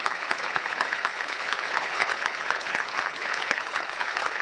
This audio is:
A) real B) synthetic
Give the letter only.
B